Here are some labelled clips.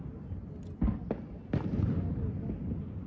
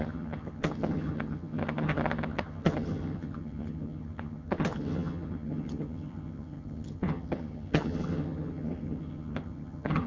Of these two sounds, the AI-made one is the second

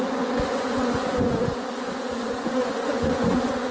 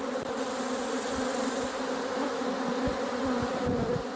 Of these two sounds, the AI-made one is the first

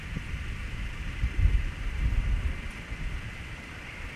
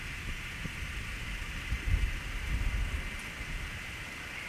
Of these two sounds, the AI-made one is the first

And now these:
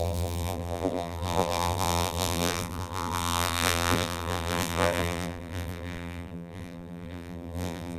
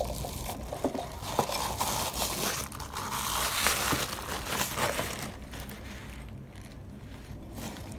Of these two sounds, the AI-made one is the first